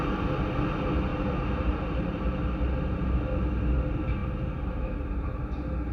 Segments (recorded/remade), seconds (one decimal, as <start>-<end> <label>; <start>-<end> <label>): 0.0-1.1 recorded; 1.1-3.2 remade; 3.2-5.9 recorded